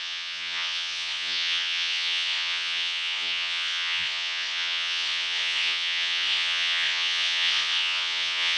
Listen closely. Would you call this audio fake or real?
fake